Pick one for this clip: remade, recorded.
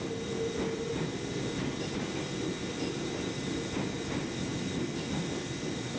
recorded